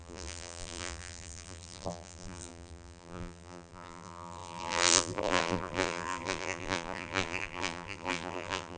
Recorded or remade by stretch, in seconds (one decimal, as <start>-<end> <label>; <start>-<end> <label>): 0.0-8.8 remade